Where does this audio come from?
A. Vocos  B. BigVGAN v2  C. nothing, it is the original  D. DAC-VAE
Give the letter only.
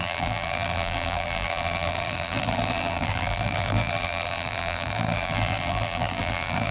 B